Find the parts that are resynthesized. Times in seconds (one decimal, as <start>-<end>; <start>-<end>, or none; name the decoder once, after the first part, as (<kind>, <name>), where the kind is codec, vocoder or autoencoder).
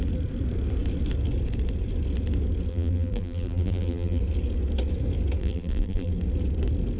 2.7-4.2 (vocoder, BigVGAN v2); 5.4-6.1